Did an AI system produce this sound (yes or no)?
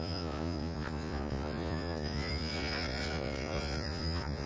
yes